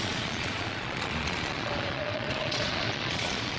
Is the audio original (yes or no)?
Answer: no